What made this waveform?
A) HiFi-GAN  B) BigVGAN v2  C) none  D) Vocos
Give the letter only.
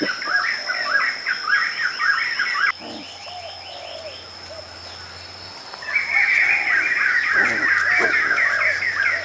C